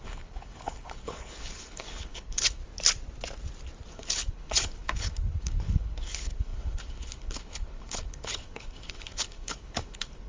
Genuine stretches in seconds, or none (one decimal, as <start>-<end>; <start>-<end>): 2.6-3.9